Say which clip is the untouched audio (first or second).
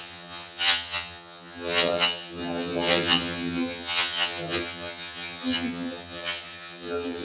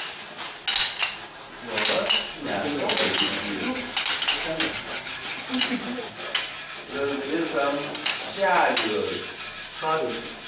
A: second